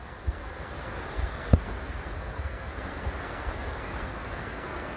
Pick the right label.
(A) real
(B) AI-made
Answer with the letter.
B